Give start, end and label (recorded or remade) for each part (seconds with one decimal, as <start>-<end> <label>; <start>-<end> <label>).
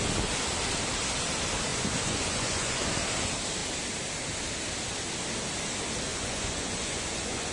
0.0-1.7 recorded; 1.7-2.9 remade; 2.9-6.1 recorded; 6.1-7.5 remade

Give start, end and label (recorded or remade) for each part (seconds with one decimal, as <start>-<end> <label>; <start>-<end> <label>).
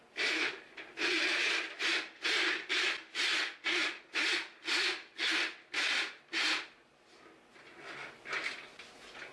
0.0-9.3 recorded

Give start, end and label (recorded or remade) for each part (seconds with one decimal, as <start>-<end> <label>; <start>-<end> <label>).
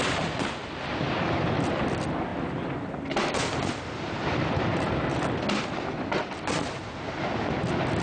0.0-8.0 recorded